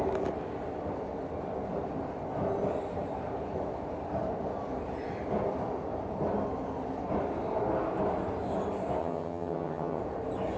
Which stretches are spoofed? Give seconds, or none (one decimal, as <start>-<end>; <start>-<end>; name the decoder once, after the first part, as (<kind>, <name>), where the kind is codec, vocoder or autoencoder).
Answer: 9.0-10.0 (vocoder, HiFi-GAN)